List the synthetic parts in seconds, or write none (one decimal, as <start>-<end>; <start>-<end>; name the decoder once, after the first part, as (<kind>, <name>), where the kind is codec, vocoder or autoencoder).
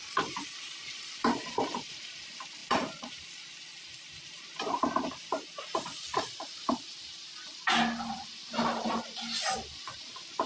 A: none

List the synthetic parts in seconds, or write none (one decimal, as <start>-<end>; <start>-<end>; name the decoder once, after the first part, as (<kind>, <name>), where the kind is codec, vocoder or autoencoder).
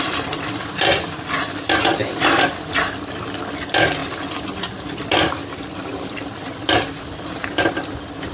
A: none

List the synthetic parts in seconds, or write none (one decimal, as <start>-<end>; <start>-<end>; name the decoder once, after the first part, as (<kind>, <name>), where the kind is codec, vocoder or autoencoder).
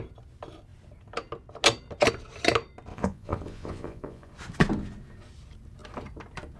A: 2.9-4.3 (vocoder, Vocos)